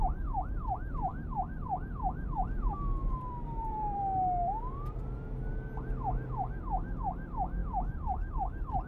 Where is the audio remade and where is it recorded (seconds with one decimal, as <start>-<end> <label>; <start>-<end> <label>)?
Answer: 0.0-1.1 recorded; 1.1-4.0 remade; 4.0-7.6 recorded; 7.6-8.3 remade; 8.3-8.9 recorded